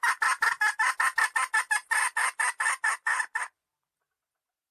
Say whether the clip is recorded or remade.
recorded